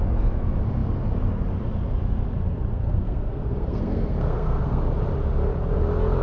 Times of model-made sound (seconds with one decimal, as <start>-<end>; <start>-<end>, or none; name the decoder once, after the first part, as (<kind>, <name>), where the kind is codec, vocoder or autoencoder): 2.7-4.8 (codec, SNAC)

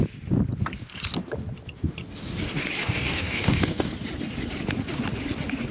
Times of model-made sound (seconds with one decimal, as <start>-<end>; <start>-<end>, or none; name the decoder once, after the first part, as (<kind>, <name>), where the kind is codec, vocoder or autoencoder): 2.8-3.9 (codec, DAC)